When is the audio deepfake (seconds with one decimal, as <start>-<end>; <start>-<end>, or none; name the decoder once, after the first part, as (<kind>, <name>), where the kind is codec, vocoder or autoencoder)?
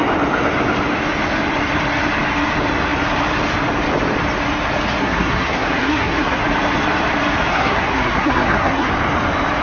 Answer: 5.0-6.4 (codec, SNAC); 7.5-8.9